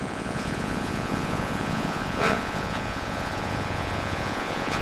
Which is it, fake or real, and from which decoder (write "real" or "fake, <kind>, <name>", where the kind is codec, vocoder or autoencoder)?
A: fake, vocoder, Vocos